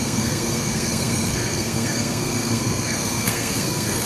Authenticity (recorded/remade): remade